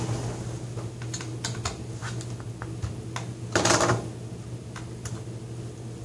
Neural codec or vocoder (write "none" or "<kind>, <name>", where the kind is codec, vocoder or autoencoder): none